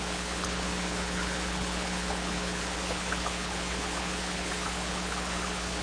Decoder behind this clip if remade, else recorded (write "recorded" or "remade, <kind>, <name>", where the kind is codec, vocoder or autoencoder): remade, codec, HILCodec